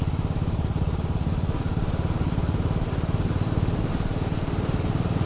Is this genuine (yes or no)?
no